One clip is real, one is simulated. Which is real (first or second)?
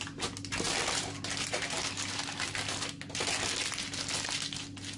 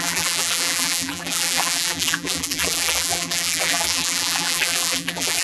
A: first